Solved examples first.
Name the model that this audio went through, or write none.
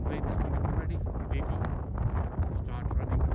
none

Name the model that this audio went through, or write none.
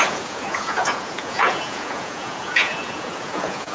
vocoder, Vocos